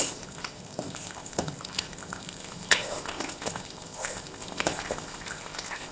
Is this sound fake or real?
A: fake